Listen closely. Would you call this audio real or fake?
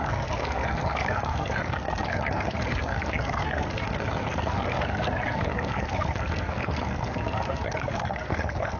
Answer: fake